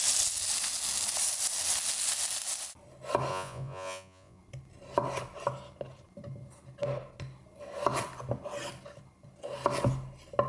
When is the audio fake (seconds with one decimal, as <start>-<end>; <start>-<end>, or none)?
3.3-4.4